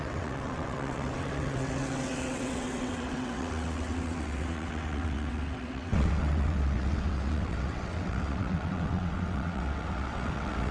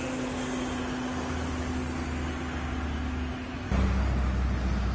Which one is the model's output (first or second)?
first